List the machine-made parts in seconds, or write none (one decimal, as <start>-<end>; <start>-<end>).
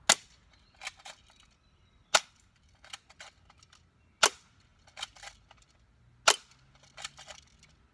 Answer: none